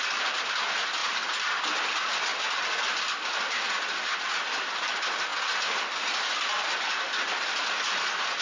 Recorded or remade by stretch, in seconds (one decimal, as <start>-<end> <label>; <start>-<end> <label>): 0.0-8.4 recorded